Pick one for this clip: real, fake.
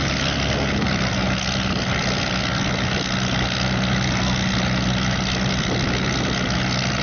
real